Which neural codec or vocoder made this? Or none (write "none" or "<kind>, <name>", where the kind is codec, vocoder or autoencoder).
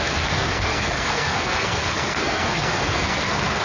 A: codec, SNAC